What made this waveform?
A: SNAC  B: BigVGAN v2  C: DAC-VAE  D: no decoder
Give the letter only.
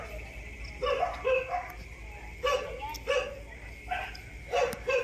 D